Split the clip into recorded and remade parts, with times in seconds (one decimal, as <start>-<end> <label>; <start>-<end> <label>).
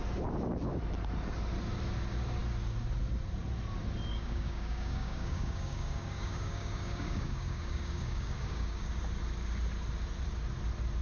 0.0-4.1 recorded; 4.1-8.9 remade; 8.9-11.0 recorded